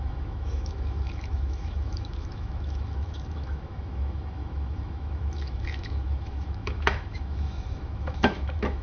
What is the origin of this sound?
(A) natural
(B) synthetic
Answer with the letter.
B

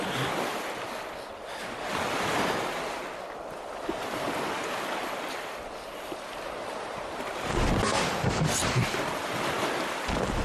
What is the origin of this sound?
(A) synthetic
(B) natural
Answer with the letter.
B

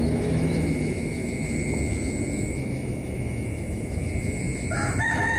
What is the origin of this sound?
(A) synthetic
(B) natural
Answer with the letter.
A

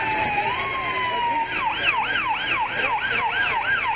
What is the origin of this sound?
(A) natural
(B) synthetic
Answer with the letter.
A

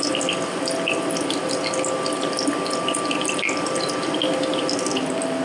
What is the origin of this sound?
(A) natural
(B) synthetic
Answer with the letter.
A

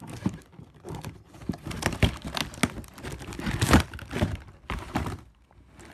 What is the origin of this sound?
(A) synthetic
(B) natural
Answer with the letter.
B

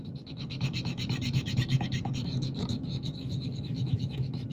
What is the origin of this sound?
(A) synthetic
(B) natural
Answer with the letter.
A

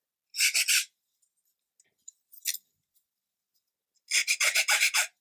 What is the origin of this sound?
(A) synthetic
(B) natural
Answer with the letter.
B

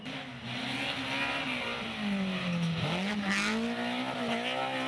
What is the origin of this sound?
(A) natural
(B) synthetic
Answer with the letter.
A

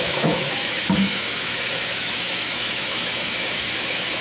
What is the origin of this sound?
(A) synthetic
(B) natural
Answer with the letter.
A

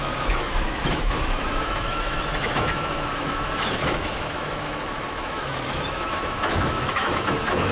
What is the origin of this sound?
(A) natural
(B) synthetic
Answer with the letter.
B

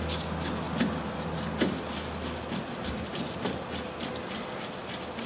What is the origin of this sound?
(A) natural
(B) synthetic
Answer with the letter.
A